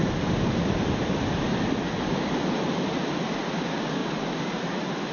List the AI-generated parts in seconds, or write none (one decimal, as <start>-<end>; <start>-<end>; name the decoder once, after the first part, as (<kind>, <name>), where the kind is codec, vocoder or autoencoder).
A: none